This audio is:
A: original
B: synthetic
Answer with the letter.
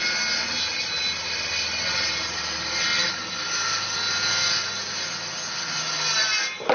A